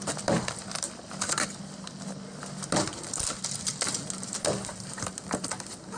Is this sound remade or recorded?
recorded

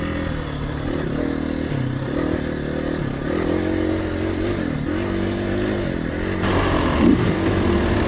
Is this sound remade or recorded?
recorded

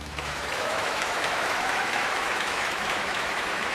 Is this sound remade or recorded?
remade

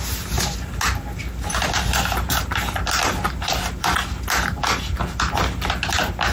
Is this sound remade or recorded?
recorded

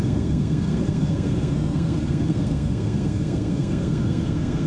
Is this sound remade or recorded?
remade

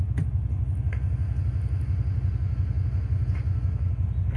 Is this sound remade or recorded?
recorded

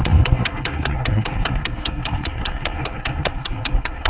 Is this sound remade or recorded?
remade